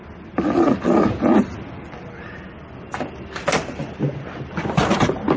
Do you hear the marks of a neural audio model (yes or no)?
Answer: no